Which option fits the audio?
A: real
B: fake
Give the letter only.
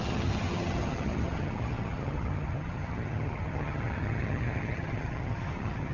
B